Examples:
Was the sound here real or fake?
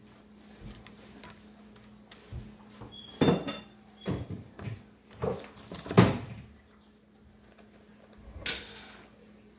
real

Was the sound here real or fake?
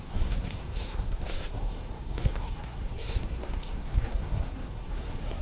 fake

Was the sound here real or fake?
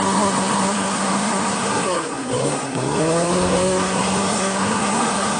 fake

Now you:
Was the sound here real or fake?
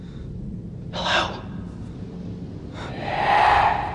real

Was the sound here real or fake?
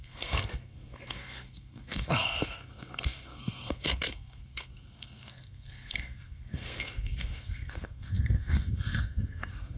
fake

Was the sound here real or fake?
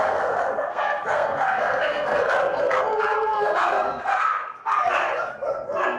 fake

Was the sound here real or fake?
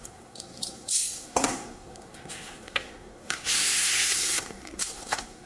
fake